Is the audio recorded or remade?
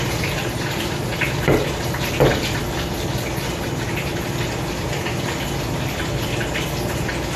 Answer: recorded